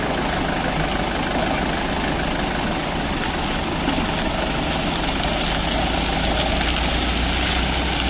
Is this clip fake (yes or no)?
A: no